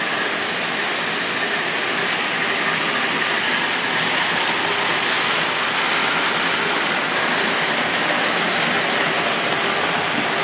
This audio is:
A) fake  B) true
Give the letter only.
B